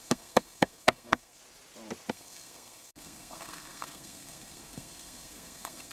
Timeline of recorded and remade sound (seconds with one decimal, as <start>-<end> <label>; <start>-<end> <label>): 0.0-1.4 remade; 1.4-2.1 recorded; 2.1-5.9 remade